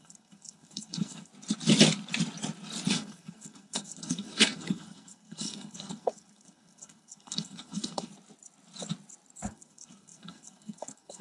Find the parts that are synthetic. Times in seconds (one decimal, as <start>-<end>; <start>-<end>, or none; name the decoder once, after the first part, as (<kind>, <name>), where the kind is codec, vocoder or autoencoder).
0.0-1.3 (codec, SNAC); 2.9-8.1; 9.5-11.2